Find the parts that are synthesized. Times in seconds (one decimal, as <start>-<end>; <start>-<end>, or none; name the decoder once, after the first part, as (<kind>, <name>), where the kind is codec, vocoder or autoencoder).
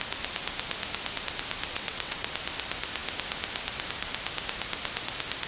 1.7-2.3 (vocoder, WaveNeXt)